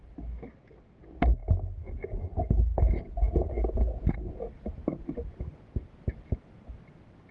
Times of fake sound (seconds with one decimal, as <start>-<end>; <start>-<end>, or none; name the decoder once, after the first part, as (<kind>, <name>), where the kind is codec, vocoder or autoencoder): none